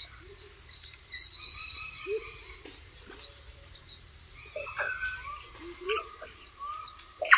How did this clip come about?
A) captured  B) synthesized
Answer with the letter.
B